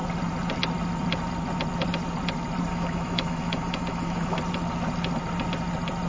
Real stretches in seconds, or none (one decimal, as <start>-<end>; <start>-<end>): 0.0-2.7; 4.4-6.1